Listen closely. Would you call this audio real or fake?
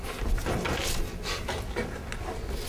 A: real